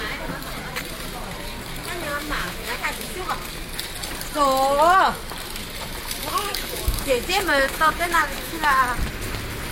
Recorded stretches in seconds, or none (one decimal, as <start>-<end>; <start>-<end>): 0.0-2.1; 3.2-6.2; 8.8-9.7